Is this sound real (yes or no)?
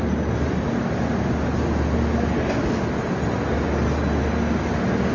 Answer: yes